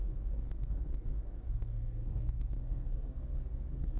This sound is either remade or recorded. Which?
remade